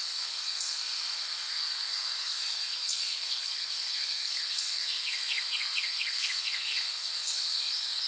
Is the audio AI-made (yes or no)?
yes